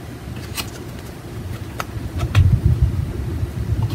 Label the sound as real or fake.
real